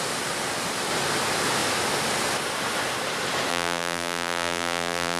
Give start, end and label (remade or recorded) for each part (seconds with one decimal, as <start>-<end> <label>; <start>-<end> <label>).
0.0-3.5 recorded; 3.5-5.2 remade